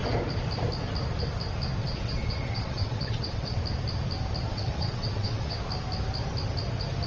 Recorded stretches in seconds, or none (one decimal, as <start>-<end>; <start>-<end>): 0.0-1.8; 3.6-4.5; 5.6-7.1